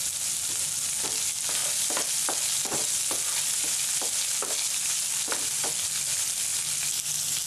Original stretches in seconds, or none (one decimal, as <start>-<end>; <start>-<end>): 0.0-7.5